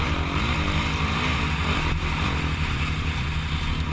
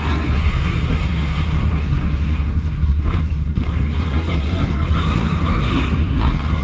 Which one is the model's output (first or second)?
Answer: second